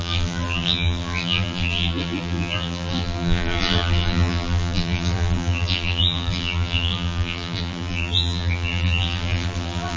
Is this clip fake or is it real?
fake